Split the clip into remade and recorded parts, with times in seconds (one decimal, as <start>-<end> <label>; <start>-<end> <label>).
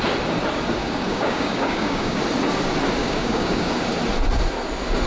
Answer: 0.0-0.8 recorded; 0.8-2.2 remade; 2.2-3.0 recorded; 3.0-3.7 remade; 3.7-5.1 recorded